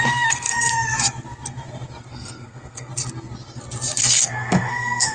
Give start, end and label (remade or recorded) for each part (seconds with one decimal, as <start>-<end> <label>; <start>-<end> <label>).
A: 0.0-0.9 remade; 0.9-2.1 recorded; 2.1-2.9 remade; 2.9-4.0 recorded; 4.0-5.1 remade